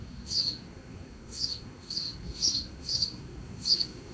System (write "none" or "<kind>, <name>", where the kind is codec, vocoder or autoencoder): codec, SNAC